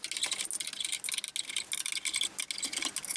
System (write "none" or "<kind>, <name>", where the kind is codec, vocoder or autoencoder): none